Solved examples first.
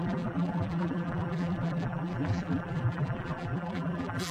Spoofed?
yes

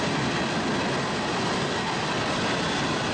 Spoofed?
no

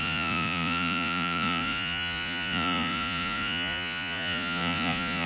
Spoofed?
yes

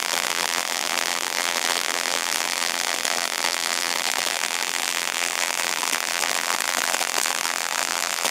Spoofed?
yes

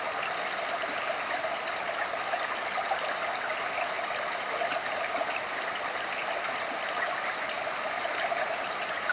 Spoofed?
no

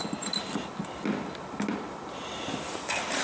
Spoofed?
no